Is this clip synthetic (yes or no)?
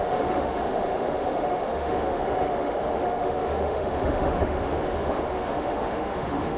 yes